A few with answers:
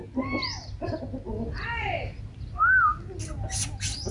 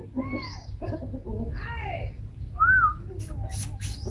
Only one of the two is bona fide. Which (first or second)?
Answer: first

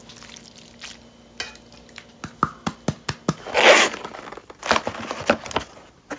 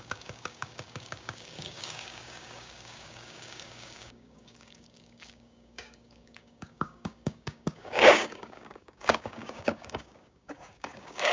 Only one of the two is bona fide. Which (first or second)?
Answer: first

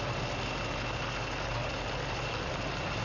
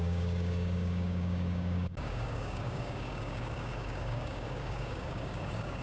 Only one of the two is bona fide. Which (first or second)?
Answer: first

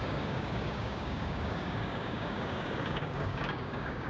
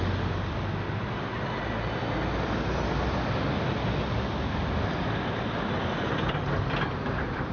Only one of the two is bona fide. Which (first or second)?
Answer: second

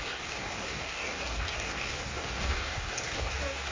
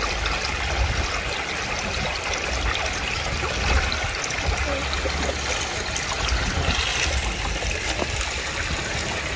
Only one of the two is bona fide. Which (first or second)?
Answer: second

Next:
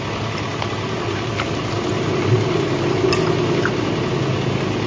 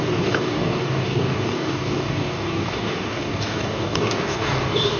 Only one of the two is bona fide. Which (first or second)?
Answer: first